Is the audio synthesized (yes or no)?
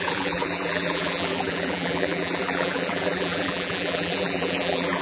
yes